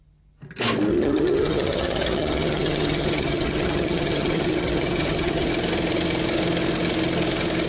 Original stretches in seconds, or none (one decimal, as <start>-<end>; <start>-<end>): 0.0-0.9; 5.5-7.7